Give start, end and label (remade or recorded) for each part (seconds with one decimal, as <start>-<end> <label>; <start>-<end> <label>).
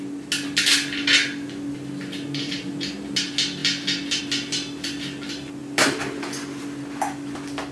0.0-7.7 recorded